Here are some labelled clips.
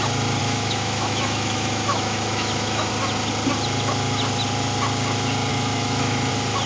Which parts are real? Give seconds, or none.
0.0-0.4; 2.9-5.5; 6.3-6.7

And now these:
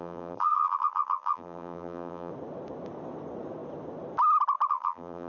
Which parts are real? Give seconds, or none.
2.3-4.7

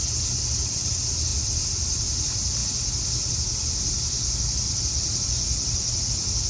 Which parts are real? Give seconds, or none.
0.0-6.5

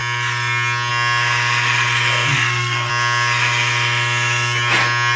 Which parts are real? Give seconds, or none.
0.0-2.3; 2.9-5.2

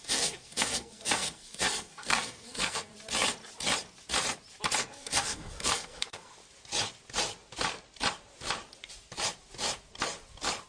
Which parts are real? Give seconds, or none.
2.9-4.8; 6.4-10.7